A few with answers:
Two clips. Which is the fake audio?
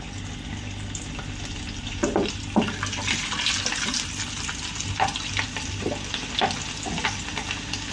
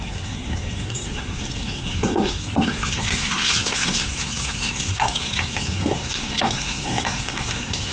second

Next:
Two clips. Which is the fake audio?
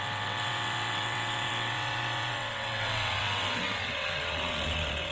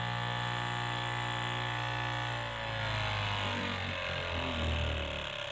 first